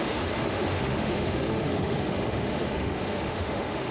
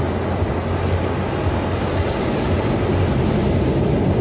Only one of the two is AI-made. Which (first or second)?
first